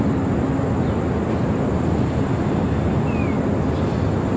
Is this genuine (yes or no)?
yes